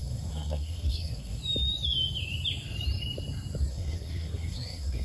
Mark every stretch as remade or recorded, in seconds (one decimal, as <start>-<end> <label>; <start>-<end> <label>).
0.0-1.4 remade; 1.4-3.7 recorded; 3.7-5.0 remade